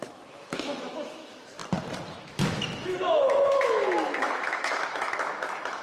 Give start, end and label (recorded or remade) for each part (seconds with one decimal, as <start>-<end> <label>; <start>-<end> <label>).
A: 0.0-1.6 remade; 1.6-2.2 recorded; 2.2-5.8 remade